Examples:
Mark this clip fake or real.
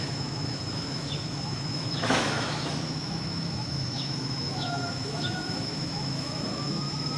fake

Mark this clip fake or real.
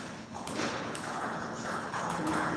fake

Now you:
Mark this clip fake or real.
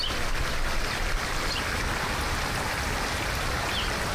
real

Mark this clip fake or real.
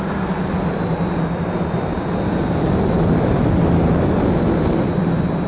real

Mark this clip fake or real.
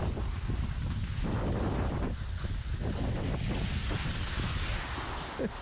real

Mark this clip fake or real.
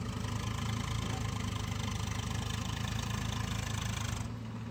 real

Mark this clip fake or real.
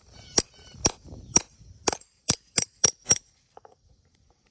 fake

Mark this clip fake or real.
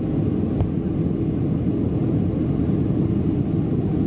real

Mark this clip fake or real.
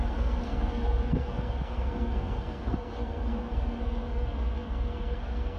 fake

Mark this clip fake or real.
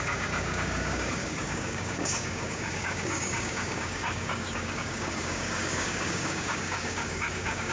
fake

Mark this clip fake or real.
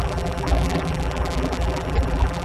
fake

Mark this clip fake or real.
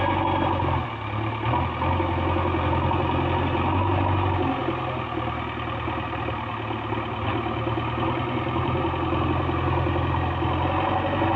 real